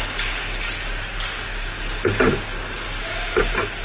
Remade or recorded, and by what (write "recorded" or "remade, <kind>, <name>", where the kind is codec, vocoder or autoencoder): recorded